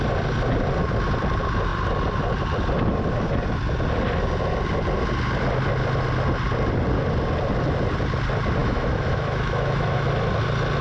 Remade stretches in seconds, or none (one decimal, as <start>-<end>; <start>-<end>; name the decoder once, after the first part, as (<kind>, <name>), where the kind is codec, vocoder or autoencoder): 8.6-10.1 (autoencoder, DAC-VAE)

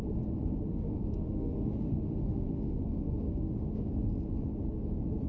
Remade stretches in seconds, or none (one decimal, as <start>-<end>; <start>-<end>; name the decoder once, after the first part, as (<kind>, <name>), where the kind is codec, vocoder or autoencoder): 0.7-3.9 (autoencoder, DAC-VAE)